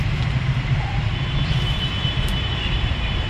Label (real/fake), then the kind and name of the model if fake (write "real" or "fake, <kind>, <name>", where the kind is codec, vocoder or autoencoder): fake, vocoder, BigVGAN v2